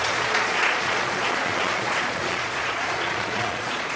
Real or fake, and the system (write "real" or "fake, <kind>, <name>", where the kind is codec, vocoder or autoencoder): fake, vocoder, Vocos